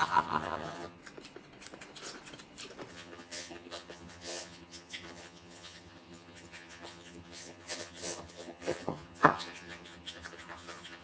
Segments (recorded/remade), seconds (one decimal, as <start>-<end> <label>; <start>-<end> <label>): 0.0-1.0 remade; 1.0-2.9 recorded; 2.9-11.0 remade